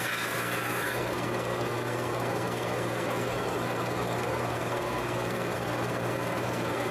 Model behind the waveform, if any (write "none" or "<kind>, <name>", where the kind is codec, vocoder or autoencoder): codec, SNAC